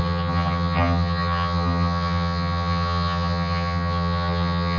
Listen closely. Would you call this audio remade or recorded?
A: remade